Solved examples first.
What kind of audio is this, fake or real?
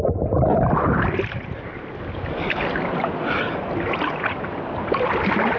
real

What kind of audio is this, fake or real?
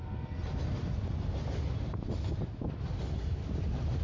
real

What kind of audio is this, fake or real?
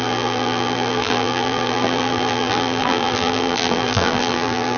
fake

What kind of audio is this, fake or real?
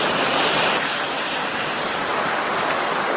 real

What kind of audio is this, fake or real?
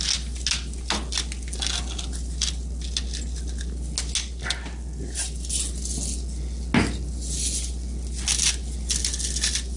real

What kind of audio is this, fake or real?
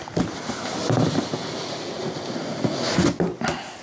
real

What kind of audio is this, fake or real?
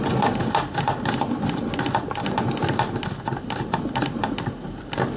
real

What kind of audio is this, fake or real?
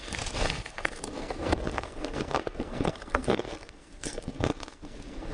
fake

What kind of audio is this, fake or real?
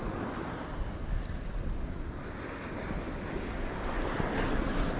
real